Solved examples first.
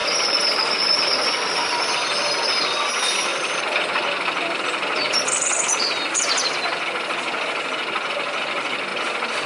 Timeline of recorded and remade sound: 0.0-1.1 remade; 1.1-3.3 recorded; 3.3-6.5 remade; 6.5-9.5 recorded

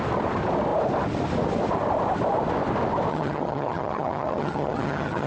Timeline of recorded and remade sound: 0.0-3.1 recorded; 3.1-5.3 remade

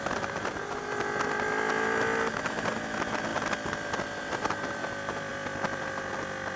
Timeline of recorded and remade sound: 0.0-3.3 recorded; 3.3-4.8 remade; 4.8-5.3 recorded; 5.3-6.1 remade; 6.1-6.6 recorded

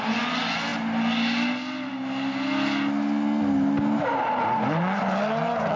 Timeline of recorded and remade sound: 0.0-5.8 recorded

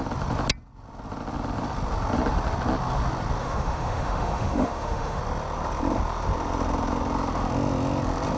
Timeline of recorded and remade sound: 0.0-3.4 recorded; 3.4-5.2 remade; 5.2-8.4 recorded